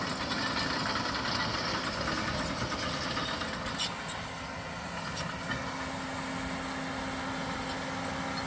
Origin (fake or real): real